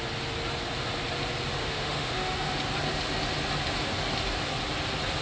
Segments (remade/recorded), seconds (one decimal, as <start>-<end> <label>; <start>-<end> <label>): 0.0-1.6 recorded; 1.6-2.6 remade; 2.6-5.2 recorded